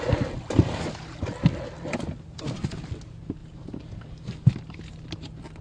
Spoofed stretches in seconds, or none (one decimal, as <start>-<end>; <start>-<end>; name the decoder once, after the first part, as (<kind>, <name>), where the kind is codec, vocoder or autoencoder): 3.4-4.1 (vocoder, BigVGAN v2)